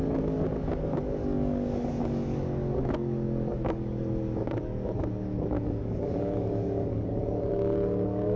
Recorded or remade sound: remade